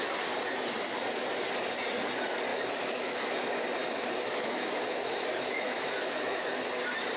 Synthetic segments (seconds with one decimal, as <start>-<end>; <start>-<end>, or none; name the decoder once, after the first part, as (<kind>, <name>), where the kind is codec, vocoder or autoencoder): 2.5-3.4 (autoencoder, DAC-VAE); 3.8-6.6